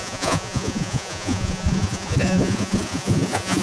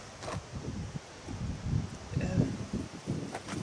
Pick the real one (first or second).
second